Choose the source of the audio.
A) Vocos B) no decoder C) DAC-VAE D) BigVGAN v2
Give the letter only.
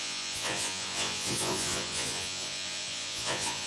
A